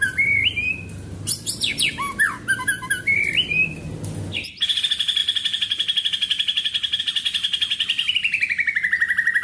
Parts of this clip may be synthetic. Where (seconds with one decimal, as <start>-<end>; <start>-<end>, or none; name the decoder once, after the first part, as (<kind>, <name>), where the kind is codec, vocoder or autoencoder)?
none